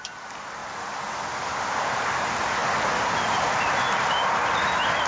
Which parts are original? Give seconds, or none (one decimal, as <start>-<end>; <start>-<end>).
0.6-1.8; 2.6-3.8